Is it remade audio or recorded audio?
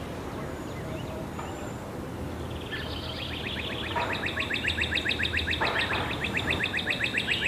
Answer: recorded